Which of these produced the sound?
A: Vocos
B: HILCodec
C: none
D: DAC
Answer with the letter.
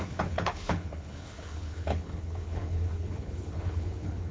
B